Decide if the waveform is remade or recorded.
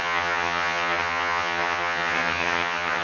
remade